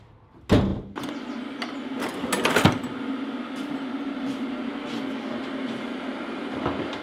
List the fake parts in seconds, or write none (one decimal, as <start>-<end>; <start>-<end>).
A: 5.4-6.6